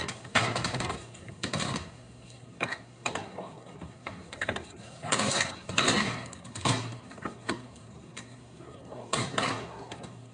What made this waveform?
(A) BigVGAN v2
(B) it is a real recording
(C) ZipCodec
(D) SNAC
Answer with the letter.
D